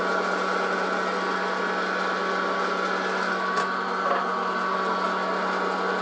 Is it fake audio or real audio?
real